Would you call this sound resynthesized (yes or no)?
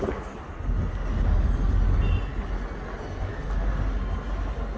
no